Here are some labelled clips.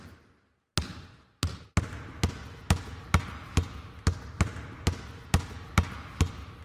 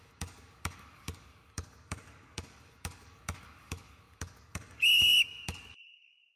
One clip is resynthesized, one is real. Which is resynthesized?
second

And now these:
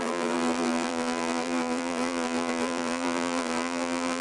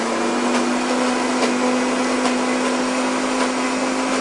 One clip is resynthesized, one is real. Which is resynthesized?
first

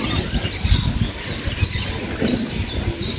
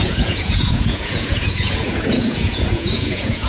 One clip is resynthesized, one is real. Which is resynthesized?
second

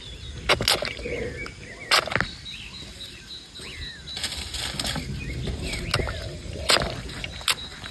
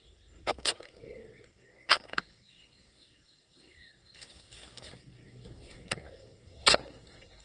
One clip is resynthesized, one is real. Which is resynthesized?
second